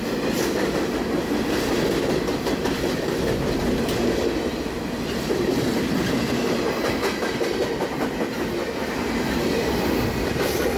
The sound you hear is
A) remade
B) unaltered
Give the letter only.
B